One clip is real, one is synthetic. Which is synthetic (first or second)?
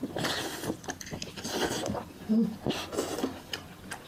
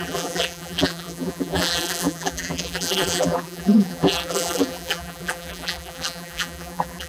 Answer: second